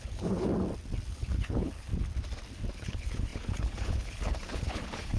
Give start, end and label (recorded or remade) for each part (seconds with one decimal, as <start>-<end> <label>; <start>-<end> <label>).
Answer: 0.0-0.5 remade; 0.5-1.1 recorded; 1.1-1.9 remade; 1.9-2.7 recorded; 2.7-5.2 remade